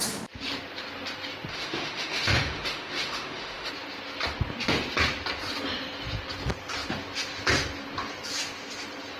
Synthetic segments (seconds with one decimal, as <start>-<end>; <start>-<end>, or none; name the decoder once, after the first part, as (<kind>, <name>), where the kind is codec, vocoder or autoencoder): 1.5-3.7 (autoencoder, DAC-VAE)